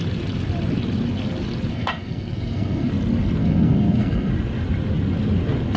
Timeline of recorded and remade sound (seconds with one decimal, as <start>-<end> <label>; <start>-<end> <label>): 0.0-1.7 recorded; 1.7-2.9 remade; 2.9-3.4 recorded; 3.4-4.3 remade; 4.3-5.8 recorded

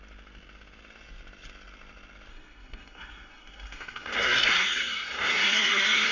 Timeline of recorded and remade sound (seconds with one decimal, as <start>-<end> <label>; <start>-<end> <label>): 0.0-2.3 recorded; 2.3-6.1 remade

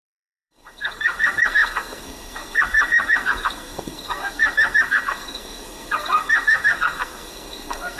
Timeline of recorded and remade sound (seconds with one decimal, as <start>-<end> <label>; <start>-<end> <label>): 0.0-8.0 remade